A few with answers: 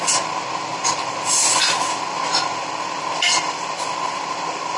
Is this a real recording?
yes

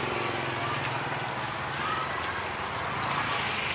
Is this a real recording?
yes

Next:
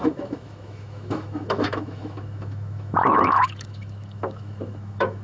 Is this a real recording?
no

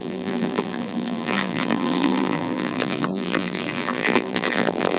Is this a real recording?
no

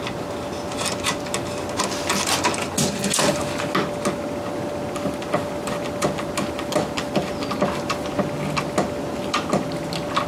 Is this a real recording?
yes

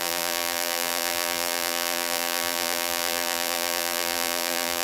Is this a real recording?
no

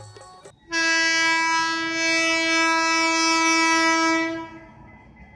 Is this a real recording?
yes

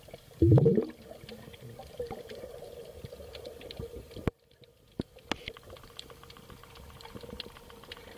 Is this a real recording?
yes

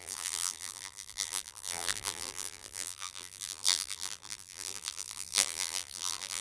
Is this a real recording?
no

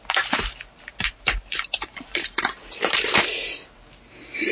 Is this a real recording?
no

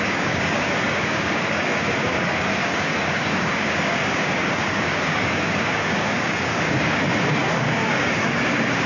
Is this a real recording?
no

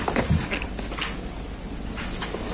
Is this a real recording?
yes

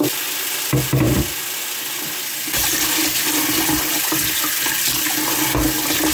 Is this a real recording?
yes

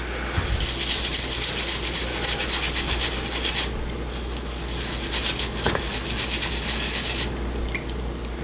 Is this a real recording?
yes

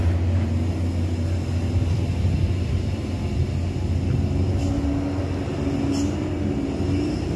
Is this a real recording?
yes